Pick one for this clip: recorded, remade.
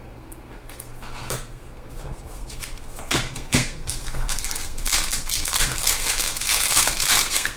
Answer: remade